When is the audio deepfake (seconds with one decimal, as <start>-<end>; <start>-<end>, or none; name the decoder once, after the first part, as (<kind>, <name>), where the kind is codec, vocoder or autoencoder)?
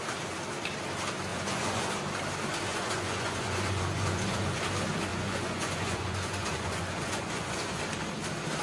1.3-1.9 (vocoder, Vocos); 2.7-4.6; 5.1-7.8